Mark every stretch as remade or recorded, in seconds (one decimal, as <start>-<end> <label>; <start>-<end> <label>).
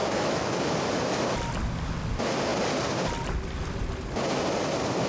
0.0-0.6 remade; 0.6-5.1 recorded